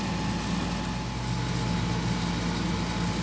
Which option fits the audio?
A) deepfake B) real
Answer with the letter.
B